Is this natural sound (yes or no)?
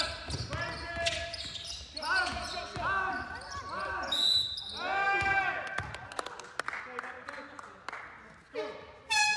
yes